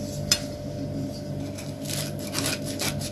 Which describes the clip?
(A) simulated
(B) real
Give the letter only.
B